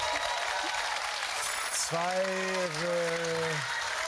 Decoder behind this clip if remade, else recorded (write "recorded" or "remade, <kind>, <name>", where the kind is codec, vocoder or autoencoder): recorded